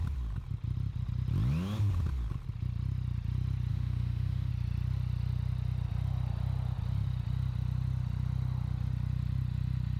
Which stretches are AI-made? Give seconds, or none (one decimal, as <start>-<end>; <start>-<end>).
3.7-4.5